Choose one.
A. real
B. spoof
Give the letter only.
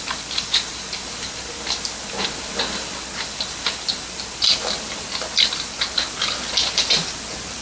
A